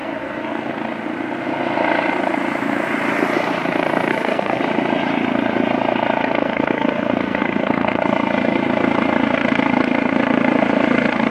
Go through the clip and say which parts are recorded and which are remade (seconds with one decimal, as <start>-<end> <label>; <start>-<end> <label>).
0.0-0.7 remade; 0.7-4.1 recorded; 4.1-4.6 remade; 4.6-6.4 recorded; 6.4-8.0 remade; 8.0-11.3 recorded